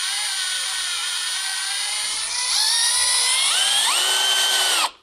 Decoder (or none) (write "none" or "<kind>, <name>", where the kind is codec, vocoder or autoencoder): none